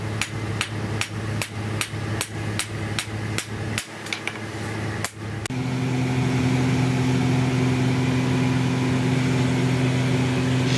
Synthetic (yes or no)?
no